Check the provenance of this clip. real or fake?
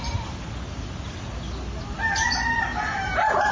real